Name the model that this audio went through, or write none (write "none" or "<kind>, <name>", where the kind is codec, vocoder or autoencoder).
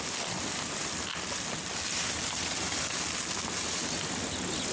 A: none